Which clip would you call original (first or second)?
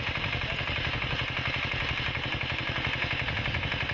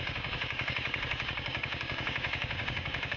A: first